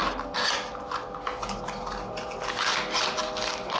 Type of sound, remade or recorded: recorded